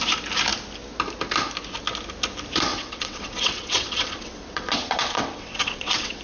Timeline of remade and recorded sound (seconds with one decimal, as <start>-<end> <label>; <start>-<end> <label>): 0.0-2.7 recorded; 2.7-6.2 remade